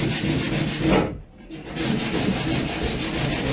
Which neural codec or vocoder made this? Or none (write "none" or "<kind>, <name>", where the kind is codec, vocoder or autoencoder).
none